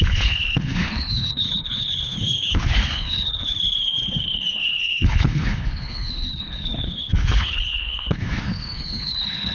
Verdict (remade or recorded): remade